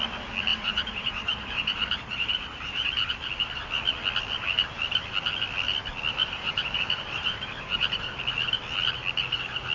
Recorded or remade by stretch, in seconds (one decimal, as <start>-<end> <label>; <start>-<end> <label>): 0.0-0.5 recorded; 0.5-3.1 remade; 3.1-6.2 recorded; 6.2-8.2 remade; 8.2-9.7 recorded